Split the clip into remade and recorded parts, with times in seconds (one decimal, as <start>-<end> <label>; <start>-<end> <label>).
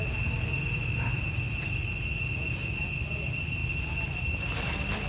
0.0-1.8 remade; 1.8-2.9 recorded; 2.9-3.6 remade; 3.6-5.1 recorded